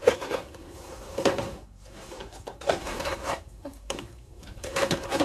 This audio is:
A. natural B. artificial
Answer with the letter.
B